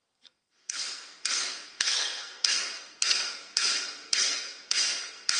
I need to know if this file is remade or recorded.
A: remade